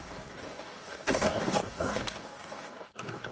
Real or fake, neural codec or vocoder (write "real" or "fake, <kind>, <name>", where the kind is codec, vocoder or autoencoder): fake, codec, DAC